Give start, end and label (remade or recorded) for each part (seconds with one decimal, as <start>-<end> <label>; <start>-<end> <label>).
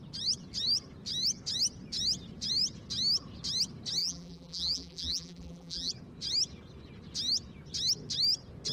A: 0.0-4.0 recorded; 4.0-5.9 remade; 5.9-8.7 recorded